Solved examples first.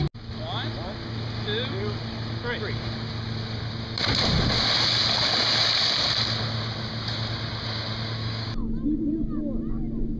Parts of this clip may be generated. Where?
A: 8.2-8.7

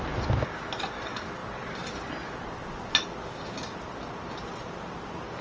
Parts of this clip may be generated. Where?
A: none

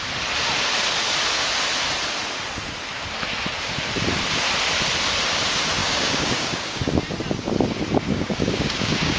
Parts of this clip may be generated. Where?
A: 5.8-6.8; 8.1-9.2

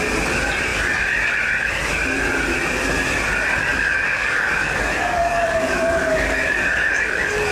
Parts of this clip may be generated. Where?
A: 3.7-7.5

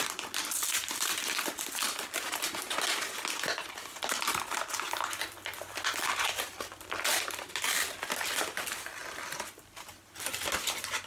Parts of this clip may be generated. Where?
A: none